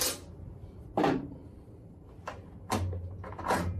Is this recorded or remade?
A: remade